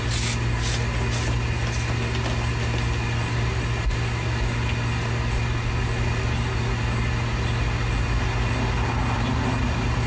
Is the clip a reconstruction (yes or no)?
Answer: no